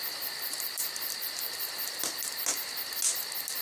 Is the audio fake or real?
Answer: real